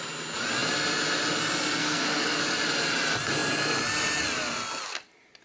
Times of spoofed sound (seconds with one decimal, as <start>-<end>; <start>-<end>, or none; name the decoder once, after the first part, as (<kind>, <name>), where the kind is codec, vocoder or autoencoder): 1.8-2.4 (codec, SNAC)